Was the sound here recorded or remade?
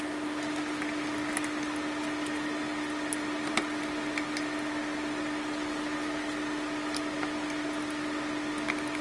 recorded